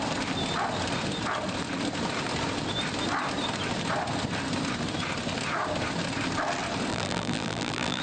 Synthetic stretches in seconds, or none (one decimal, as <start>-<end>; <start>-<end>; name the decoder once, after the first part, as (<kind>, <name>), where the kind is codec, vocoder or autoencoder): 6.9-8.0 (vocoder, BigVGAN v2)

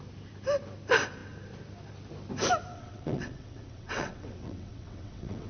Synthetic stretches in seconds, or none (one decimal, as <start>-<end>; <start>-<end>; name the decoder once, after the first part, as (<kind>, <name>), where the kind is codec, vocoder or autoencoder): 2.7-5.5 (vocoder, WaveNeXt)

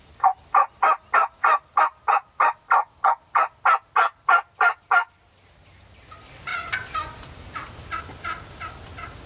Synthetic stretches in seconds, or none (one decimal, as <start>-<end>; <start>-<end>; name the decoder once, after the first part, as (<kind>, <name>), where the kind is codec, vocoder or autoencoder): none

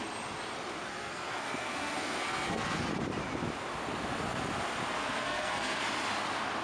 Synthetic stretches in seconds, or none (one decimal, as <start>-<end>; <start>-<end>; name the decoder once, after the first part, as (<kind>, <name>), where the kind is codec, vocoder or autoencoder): 0.9-2.9 (codec, SNAC); 5.0-5.8

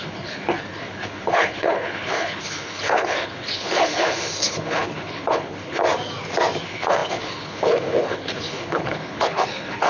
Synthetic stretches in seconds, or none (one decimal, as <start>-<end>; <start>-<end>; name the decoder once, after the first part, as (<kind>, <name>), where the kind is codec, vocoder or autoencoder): 0.0-5.8 (codec, HILCodec); 6.6-9.9

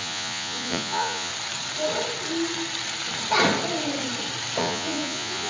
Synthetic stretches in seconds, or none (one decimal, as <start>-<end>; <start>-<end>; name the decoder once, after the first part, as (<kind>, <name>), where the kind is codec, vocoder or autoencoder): 0.0-1.3 (vocoder, Vocos); 4.6-5.5

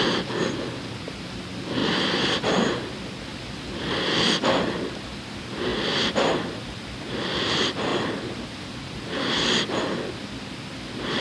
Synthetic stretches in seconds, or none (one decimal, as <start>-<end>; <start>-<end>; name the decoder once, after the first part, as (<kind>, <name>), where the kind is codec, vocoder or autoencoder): 1.8-2.9 (vocoder, BigVGAN v2); 3.3-4.0; 5.7-6.3